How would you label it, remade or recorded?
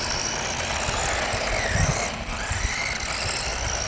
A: recorded